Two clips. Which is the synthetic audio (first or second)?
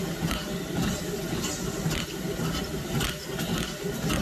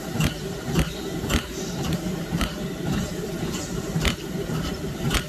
second